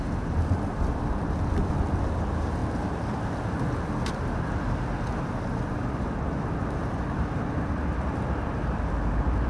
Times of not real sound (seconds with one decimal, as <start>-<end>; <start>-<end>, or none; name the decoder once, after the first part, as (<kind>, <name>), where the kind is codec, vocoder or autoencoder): none